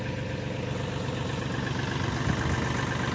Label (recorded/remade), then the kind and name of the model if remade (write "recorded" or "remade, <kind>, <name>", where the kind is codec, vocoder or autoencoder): recorded